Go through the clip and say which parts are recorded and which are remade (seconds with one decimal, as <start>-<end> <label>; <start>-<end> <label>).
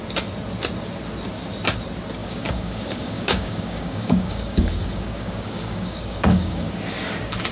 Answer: 0.0-2.2 recorded; 2.2-6.7 remade; 6.7-7.5 recorded